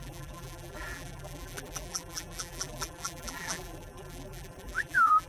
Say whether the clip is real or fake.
fake